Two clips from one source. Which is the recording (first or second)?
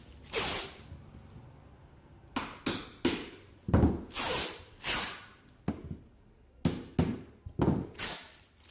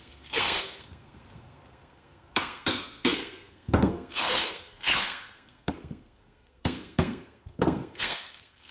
first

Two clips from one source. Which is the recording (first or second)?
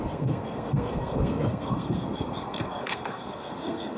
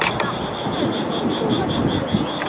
second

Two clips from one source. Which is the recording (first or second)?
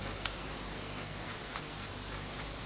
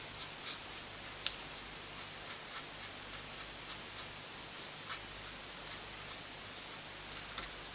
second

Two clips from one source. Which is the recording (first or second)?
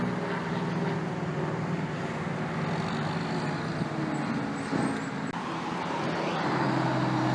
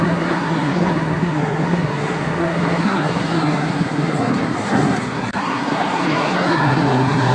first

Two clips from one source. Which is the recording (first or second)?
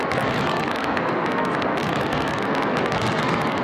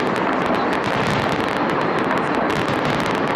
second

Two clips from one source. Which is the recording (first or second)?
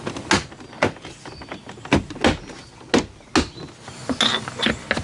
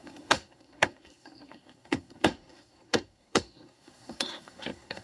first